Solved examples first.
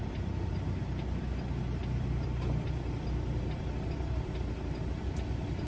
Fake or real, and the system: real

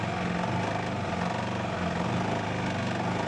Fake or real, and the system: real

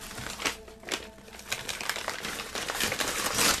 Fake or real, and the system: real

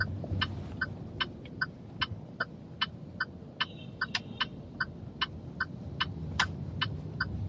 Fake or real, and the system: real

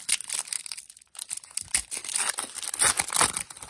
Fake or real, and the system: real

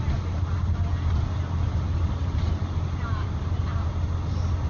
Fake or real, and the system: real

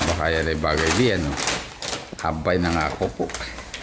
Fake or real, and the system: real